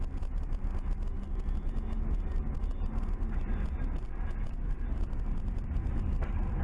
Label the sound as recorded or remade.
recorded